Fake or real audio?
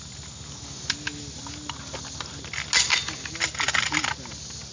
real